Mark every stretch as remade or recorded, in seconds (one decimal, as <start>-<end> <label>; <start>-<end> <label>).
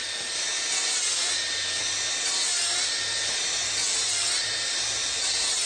0.0-5.7 recorded